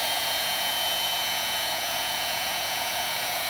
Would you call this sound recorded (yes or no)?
no